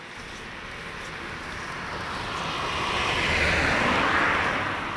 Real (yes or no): yes